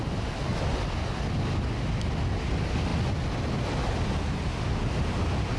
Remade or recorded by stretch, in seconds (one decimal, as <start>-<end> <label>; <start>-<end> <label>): 0.0-5.6 recorded